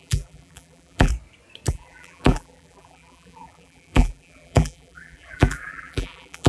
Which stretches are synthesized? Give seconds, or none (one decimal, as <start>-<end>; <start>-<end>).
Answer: 0.0-1.1; 1.7-6.5